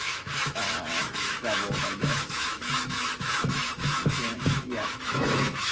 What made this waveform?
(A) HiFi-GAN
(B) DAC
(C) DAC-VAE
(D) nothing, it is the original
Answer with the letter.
C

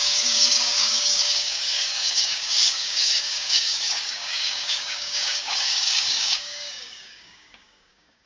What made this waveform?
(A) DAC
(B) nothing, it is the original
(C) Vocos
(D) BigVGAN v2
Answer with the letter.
A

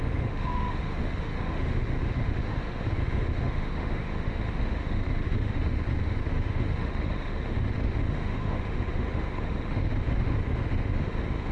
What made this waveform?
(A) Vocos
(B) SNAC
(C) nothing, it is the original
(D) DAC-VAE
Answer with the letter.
D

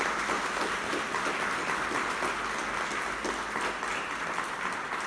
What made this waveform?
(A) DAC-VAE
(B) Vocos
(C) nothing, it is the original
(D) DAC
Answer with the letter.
C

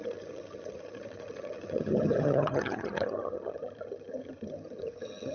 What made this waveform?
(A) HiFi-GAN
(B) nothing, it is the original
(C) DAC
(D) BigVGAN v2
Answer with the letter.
A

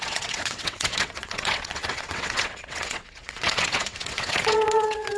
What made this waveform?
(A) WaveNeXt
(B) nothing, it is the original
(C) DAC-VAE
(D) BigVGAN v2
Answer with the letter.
A